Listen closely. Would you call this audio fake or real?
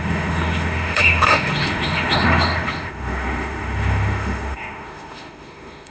fake